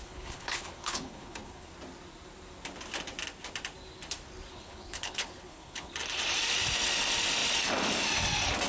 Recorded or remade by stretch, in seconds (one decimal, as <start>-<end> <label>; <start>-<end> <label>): 0.0-1.7 remade; 1.7-4.5 recorded; 4.5-5.9 remade; 5.9-8.7 recorded